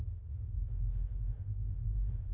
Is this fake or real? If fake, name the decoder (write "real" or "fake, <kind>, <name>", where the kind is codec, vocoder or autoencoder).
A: fake, autoencoder, DAC-VAE